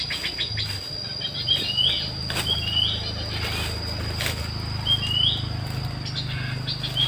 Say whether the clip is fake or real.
real